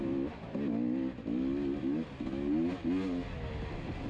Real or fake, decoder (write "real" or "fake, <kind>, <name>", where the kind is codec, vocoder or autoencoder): real